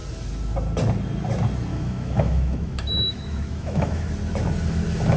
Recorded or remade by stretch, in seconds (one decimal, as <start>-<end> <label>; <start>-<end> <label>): 0.0-1.7 recorded; 1.7-4.1 remade; 4.1-5.2 recorded